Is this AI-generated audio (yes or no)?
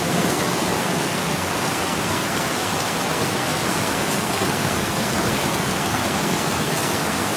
yes